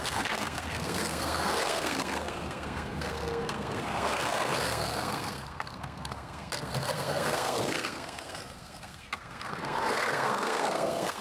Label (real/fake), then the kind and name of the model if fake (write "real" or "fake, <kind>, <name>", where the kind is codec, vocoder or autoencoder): fake, codec, SNAC